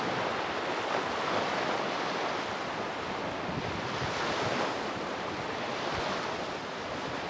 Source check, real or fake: real